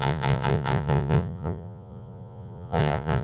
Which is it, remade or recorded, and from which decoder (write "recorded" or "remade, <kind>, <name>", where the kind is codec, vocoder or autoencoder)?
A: remade, vocoder, Vocos